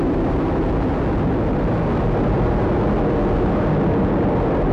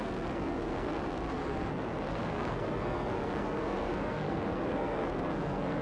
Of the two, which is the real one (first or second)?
first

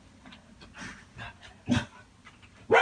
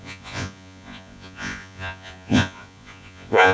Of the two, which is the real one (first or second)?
first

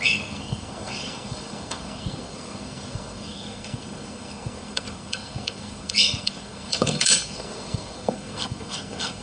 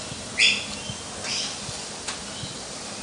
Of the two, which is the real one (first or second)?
second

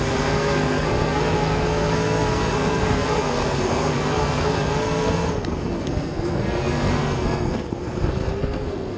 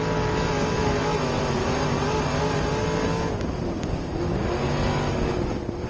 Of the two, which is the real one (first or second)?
second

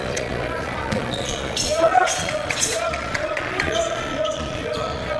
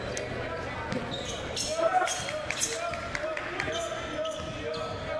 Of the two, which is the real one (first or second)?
second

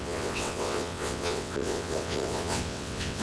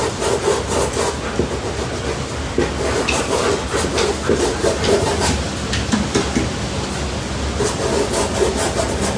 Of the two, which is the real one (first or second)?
second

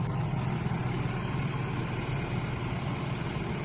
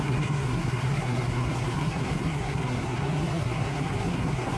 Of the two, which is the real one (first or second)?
first